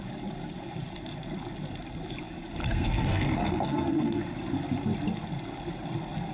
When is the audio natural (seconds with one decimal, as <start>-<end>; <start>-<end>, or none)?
0.0-2.6; 4.2-6.3

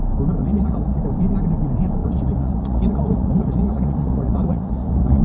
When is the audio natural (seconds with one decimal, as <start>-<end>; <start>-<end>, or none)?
0.0-0.4; 1.0-2.0

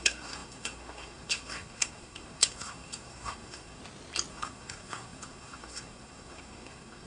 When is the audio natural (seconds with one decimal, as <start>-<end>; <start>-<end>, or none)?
3.8-4.3

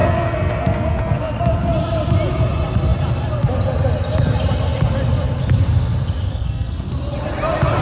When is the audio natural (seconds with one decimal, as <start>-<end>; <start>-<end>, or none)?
1.4-6.3; 6.9-7.8

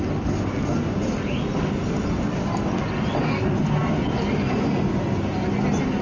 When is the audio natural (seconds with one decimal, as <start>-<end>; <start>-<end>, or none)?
0.0-6.0